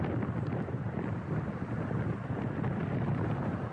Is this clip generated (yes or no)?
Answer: no